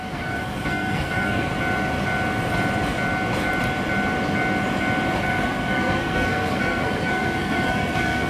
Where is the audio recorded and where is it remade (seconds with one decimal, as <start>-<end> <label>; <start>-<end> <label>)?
0.0-1.5 remade; 1.5-5.2 recorded; 5.2-8.3 remade